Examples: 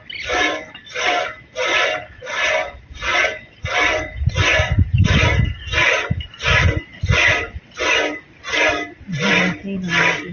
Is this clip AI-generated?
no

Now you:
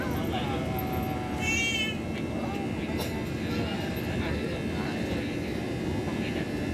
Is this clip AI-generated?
no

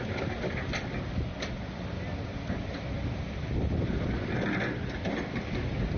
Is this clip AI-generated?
no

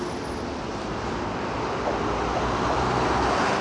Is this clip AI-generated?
no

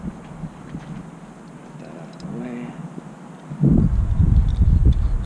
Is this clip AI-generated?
no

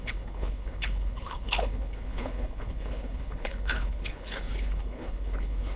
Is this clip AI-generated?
yes